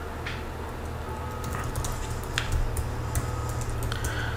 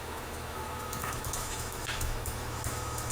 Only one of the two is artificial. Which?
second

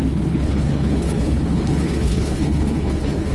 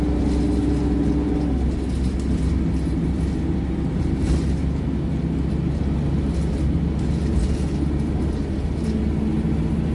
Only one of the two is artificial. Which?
first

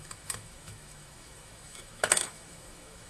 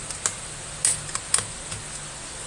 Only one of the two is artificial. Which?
first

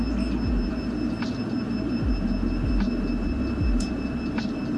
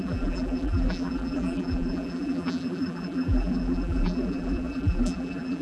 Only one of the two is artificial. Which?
second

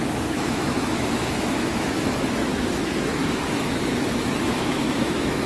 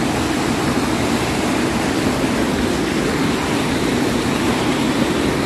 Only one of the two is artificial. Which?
first